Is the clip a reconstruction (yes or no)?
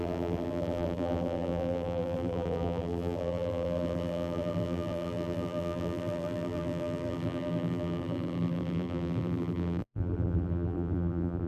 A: yes